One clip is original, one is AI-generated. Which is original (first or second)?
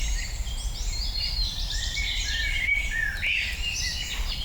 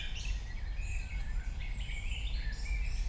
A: second